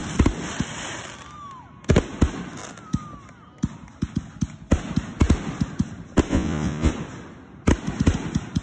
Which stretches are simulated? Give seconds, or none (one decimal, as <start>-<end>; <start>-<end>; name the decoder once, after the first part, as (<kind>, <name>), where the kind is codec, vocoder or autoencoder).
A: 6.3-6.9 (vocoder, Vocos)

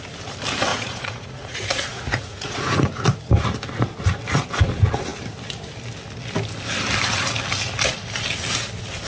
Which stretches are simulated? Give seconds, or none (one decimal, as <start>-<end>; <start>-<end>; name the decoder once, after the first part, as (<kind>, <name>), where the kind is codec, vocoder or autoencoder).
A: 0.7-3.0 (vocoder, Vocos)

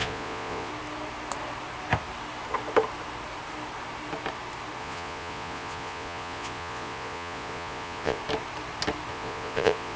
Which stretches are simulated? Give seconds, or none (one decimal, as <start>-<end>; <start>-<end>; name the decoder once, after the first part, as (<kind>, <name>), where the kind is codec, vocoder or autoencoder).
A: 0.0-0.7 (vocoder, Vocos); 4.8-8.2; 9.1-10.0

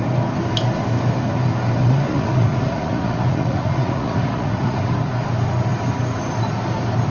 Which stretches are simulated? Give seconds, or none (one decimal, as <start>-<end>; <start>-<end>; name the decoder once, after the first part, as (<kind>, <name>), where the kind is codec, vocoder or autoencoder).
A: 1.8-4.9 (vocoder, Vocos)